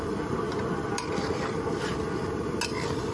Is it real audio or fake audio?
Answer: real